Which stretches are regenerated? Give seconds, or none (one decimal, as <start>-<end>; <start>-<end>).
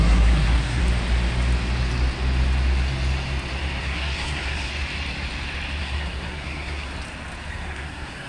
0.0-0.8; 3.8-4.7; 5.8-6.9; 7.5-8.3